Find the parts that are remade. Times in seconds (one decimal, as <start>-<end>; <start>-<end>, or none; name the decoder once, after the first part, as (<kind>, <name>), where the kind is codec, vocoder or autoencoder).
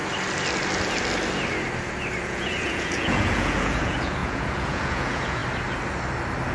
2.2-5.4 (vocoder, Vocos)